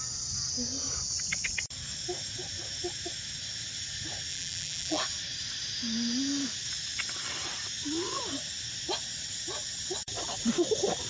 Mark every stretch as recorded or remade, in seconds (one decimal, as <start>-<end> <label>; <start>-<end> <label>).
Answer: 0.0-4.3 recorded; 4.3-5.0 remade; 5.0-11.1 recorded

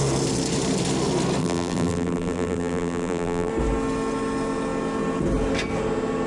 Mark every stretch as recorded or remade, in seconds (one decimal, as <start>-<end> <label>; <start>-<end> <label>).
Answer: 0.0-1.4 recorded; 1.4-3.5 remade; 3.5-6.3 recorded